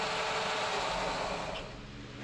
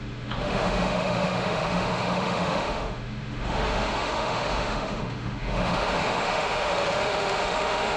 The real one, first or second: first